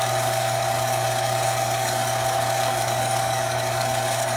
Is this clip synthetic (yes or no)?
yes